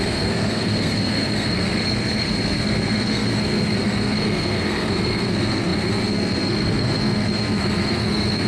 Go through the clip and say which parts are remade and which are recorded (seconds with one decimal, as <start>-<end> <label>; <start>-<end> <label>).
0.0-8.5 remade